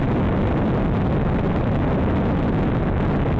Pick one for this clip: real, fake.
real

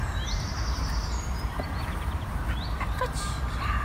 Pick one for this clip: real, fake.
fake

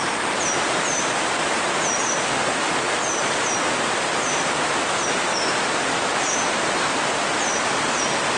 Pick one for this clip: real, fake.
real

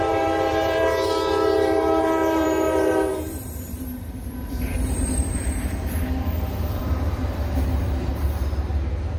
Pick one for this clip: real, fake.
fake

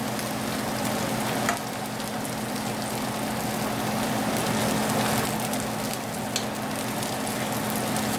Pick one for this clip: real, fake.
real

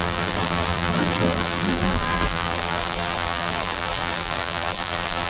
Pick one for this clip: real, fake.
fake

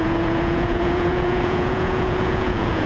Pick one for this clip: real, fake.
fake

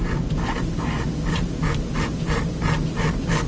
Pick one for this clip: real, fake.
real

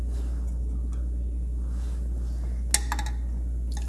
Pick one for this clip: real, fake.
real